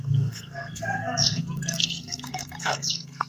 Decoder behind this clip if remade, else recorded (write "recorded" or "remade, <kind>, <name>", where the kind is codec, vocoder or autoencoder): remade, codec, SNAC